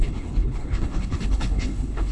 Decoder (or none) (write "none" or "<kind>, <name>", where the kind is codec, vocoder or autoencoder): codec, HILCodec